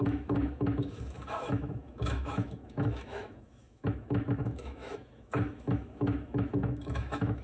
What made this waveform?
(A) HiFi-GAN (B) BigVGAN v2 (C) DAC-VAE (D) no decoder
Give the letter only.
C